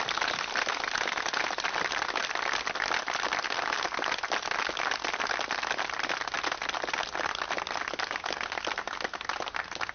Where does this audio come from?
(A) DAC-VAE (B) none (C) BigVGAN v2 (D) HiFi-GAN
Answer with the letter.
B